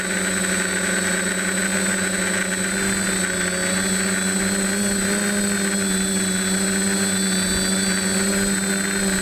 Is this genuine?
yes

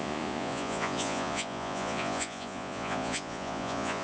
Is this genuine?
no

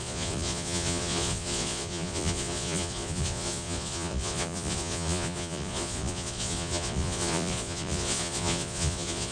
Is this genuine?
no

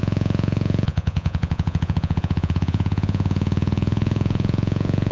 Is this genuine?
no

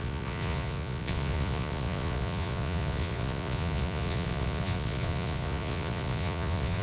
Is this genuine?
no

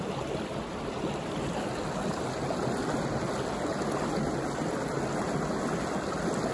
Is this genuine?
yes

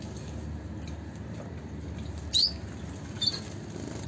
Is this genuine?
yes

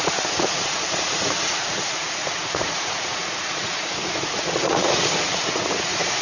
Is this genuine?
no